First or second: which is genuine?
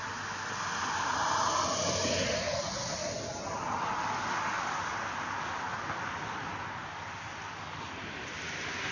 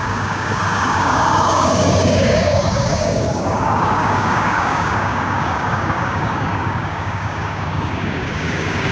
first